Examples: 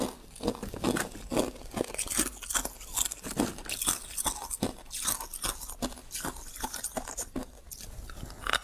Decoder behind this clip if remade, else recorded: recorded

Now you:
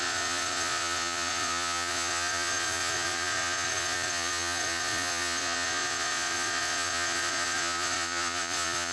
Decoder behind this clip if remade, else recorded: remade, vocoder, Vocos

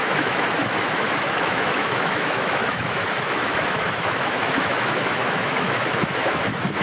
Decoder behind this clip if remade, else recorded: remade, autoencoder, DAC-VAE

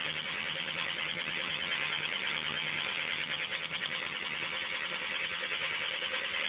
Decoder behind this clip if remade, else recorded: remade, vocoder, HiFi-GAN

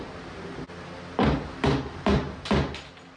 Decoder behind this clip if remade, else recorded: recorded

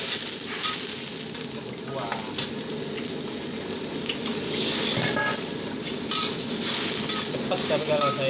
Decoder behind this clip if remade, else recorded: recorded